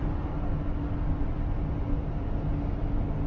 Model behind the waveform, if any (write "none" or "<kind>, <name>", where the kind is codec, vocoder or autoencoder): none